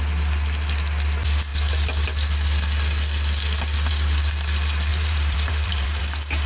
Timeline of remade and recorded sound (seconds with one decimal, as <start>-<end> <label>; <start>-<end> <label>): 0.0-4.9 recorded; 4.9-6.0 remade; 6.0-6.5 recorded